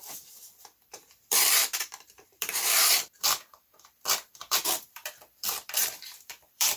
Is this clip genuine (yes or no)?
no